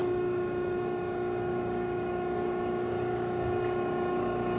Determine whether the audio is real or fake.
fake